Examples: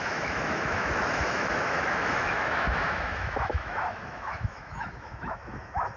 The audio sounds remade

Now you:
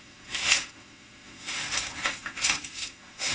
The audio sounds remade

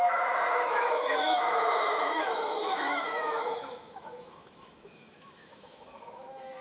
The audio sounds remade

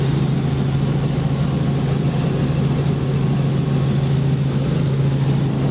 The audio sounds recorded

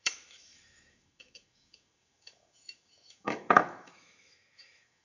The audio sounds remade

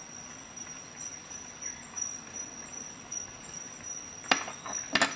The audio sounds recorded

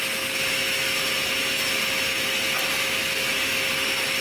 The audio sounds recorded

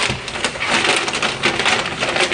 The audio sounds recorded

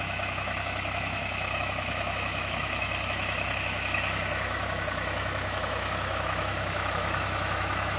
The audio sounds remade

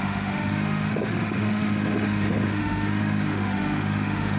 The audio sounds remade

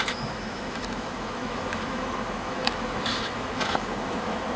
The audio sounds remade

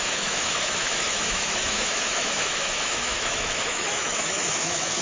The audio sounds remade